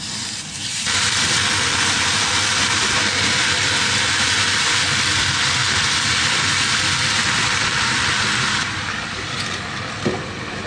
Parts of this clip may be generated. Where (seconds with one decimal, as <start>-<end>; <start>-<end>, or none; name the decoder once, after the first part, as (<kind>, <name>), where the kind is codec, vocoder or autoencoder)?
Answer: 0.0-10.7 (vocoder, BigVGAN v2)

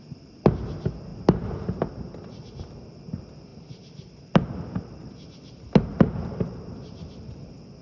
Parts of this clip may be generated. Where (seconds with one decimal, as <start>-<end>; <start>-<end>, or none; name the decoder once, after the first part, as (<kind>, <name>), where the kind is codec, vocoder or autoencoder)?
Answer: none

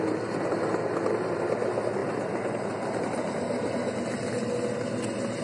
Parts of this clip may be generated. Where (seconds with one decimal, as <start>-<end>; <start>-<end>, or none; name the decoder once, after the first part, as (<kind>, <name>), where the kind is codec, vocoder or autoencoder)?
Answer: none

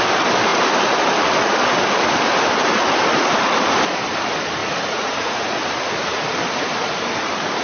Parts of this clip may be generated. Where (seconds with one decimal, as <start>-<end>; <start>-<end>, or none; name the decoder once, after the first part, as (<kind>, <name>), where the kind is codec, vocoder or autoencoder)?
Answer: 4.6-5.6 (vocoder, Vocos)

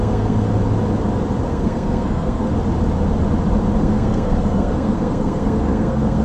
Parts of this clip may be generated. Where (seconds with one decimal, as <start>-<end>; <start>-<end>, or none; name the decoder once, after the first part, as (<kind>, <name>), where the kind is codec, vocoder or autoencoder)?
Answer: 0.0-0.5 (codec, SNAC); 1.5-2.5; 3.8-6.2